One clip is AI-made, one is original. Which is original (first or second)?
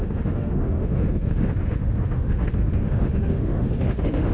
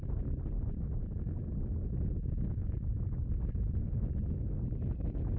second